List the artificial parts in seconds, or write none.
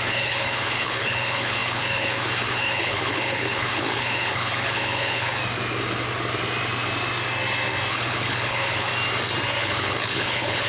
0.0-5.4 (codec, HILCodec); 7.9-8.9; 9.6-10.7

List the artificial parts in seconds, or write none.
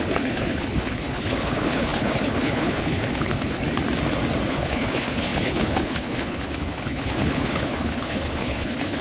0.0-3.6 (codec, HILCodec); 4.5-9.0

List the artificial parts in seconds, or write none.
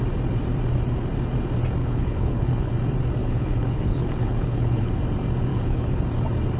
1.8-2.7 (codec, HILCodec); 3.2-4.9; 5.5-6.0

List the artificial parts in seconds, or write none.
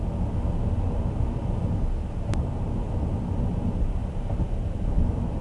none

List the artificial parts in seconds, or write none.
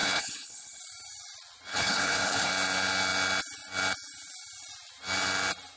0.0-0.8 (codec, HILCodec); 1.7-2.5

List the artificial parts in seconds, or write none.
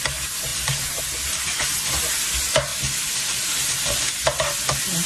none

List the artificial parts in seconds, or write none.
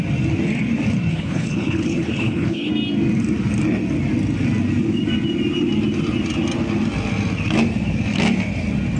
1.1-2.7 (codec, HILCodec)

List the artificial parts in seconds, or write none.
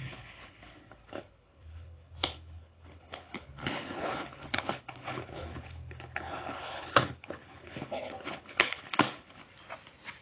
0.0-9.4 (codec, HILCodec)